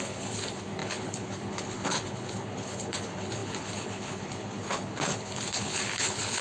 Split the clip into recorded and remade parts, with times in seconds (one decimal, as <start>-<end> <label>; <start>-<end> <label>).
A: 0.0-6.4 remade